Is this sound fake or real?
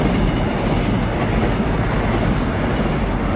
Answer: real